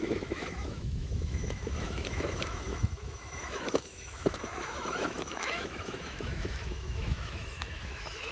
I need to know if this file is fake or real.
fake